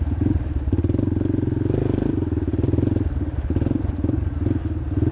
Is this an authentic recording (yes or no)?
yes